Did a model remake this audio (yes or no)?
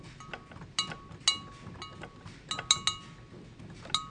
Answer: no